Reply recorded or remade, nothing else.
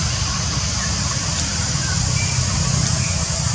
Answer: recorded